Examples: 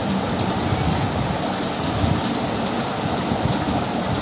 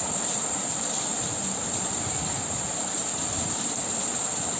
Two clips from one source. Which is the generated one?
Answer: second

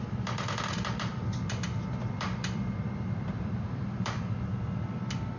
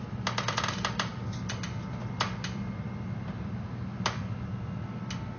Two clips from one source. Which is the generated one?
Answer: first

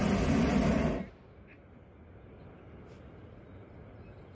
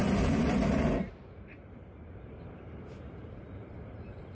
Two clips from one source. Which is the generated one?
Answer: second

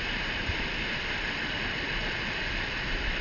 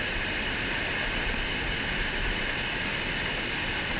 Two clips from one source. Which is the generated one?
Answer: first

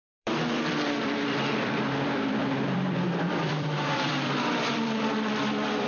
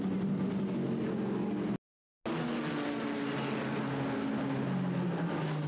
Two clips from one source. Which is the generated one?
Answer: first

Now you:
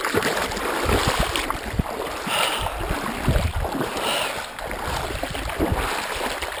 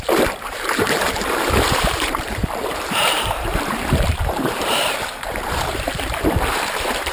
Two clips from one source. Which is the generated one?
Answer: second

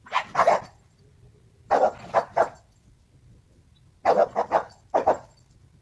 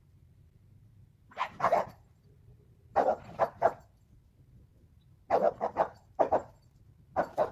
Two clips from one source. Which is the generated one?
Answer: second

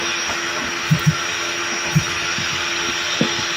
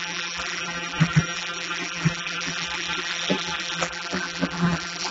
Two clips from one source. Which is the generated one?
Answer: second